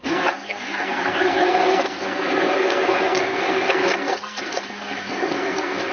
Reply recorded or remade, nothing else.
remade